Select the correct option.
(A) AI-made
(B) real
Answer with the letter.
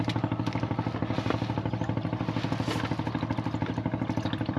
B